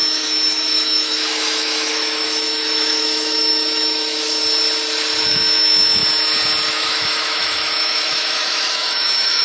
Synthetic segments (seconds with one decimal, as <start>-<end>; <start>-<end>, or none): 0.0-4.4; 5.2-6.0; 6.7-9.4